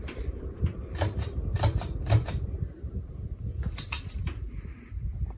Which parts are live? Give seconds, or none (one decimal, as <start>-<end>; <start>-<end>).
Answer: 3.0-4.0